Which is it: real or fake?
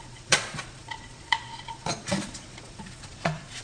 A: fake